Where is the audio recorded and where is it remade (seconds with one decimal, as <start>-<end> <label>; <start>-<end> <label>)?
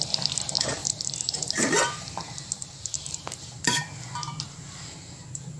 0.0-5.6 remade